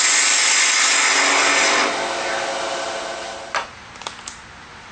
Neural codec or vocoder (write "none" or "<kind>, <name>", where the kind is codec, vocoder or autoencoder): none